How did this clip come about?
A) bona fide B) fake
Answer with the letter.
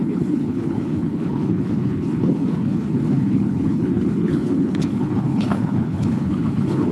B